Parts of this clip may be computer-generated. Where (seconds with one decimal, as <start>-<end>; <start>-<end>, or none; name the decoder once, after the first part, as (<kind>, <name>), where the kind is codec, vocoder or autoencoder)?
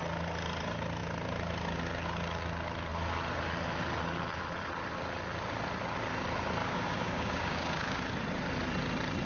6.6-8.0 (codec, DAC)